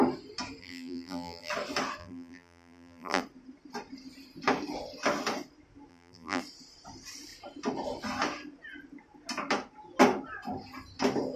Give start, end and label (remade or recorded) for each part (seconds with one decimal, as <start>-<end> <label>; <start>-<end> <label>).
0.0-0.6 recorded; 0.6-1.5 remade; 1.5-2.0 recorded; 2.0-3.2 remade; 3.2-5.9 recorded; 5.9-6.4 remade; 6.4-11.4 recorded